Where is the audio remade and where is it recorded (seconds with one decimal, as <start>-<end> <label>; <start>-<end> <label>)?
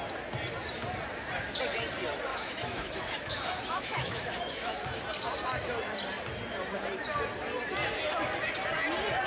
0.0-2.3 recorded; 2.3-4.8 remade; 4.8-9.3 recorded